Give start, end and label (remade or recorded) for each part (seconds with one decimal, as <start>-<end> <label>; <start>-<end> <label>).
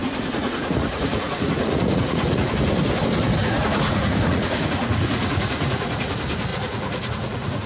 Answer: 0.0-2.5 remade; 2.5-3.4 recorded; 3.4-6.1 remade; 6.1-6.5 recorded; 6.5-7.7 remade